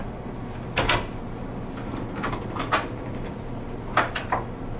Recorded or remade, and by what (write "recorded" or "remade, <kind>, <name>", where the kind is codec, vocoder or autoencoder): recorded